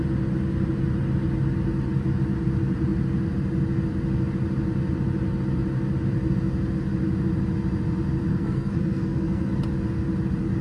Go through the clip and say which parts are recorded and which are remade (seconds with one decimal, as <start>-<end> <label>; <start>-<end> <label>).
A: 0.0-8.3 recorded; 8.3-9.5 remade; 9.5-10.6 recorded